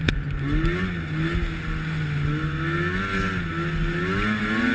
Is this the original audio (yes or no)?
yes